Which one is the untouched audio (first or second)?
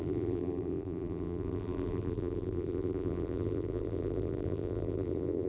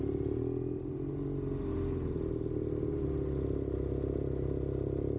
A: second